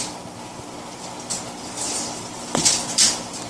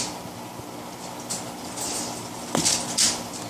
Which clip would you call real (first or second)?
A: second